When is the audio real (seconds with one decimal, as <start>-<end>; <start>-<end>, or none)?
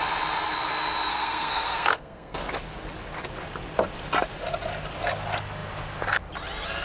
0.0-1.1; 2.4-6.8